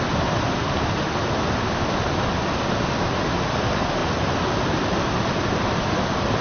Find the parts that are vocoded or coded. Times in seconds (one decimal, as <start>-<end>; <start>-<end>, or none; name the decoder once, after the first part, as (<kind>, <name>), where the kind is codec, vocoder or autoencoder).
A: none

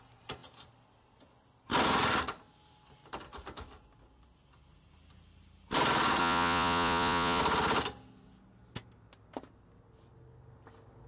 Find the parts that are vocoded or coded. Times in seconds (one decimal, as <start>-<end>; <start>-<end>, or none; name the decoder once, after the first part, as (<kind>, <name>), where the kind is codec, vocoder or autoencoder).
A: 6.2-7.4 (vocoder, Vocos)

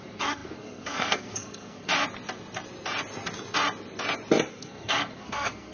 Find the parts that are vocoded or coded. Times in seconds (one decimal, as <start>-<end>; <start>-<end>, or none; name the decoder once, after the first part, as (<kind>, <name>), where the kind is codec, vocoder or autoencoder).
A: 0.0-1.9 (codec, SNAC); 4.5-5.7